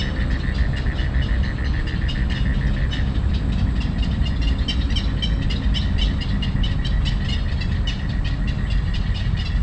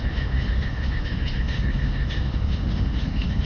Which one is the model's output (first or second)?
second